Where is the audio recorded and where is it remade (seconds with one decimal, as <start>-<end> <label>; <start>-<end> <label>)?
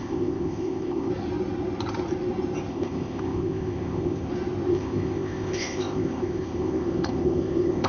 0.0-1.1 remade; 1.1-2.7 recorded; 2.7-4.3 remade; 4.3-4.7 recorded; 4.7-7.9 remade